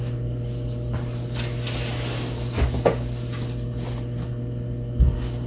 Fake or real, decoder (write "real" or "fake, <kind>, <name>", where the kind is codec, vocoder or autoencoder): real